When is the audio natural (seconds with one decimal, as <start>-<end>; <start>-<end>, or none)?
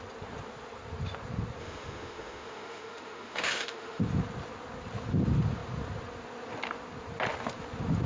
0.0-1.6; 4.0-8.1